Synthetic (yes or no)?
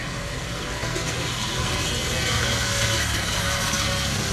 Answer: yes